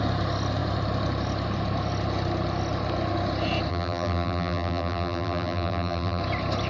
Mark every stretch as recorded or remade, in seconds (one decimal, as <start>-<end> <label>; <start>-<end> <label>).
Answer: 0.0-3.7 recorded; 3.7-6.2 remade; 6.2-6.7 recorded